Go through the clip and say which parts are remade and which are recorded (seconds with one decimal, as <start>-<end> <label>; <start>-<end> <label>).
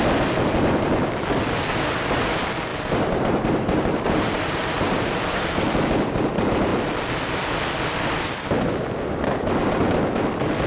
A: 0.0-2.7 recorded; 2.7-5.5 remade; 5.5-10.7 recorded